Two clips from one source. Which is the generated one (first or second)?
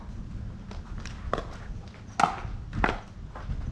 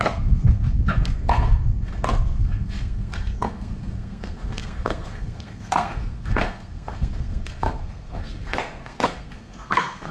second